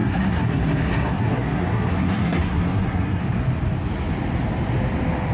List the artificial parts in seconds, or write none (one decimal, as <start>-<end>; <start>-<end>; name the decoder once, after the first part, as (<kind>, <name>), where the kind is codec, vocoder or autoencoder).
0.0-3.2 (codec, SNAC)